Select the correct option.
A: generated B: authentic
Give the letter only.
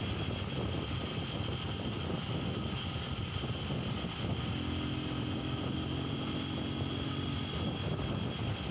B